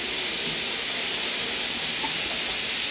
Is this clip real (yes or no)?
yes